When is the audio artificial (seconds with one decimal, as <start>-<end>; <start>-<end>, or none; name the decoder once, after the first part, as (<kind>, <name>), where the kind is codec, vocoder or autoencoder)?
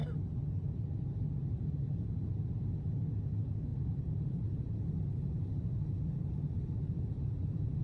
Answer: 3.7-7.8 (vocoder, BigVGAN v2)